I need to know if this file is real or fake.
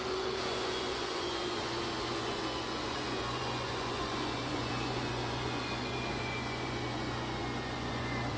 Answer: fake